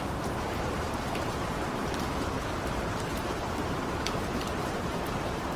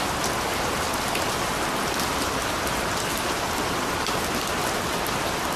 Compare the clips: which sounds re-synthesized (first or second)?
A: first